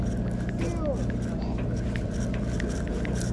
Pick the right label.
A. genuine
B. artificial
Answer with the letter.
A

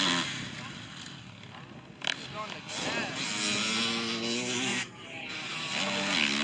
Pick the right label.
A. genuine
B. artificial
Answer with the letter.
A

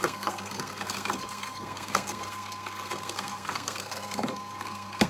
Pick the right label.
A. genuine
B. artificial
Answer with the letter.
B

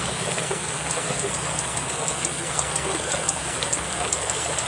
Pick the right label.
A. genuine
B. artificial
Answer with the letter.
B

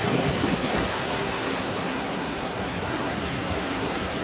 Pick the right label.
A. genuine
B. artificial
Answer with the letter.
B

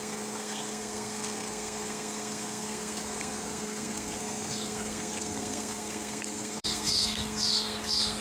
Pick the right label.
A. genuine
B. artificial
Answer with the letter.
B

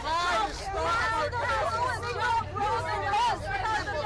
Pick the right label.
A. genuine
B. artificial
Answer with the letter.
A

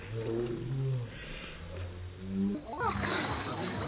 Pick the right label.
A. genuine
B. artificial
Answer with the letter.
A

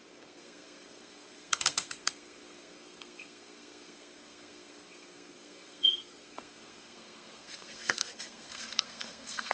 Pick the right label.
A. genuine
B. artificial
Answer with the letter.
B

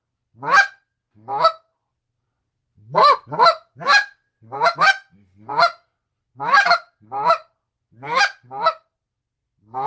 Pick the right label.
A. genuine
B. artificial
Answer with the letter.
A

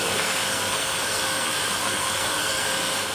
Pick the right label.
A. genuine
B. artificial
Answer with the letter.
B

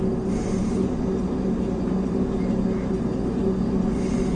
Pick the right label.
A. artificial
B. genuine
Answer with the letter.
B